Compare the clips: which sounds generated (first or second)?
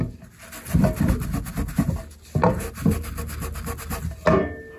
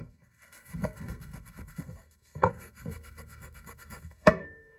second